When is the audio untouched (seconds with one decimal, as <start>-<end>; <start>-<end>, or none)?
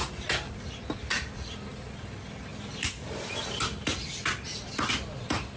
0.0-5.6